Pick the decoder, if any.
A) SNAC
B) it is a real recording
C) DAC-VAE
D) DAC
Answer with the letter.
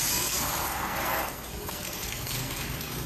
A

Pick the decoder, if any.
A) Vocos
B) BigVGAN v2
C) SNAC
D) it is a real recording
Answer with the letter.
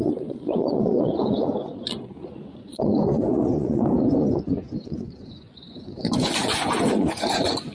A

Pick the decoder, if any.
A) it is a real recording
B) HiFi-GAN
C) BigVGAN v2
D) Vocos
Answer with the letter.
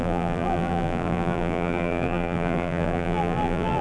C